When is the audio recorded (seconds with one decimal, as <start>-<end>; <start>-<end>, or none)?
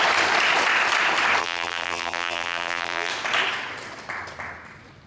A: 0.0-1.4; 3.1-5.1